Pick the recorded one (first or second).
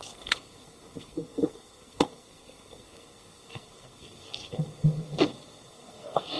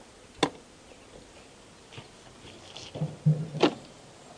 second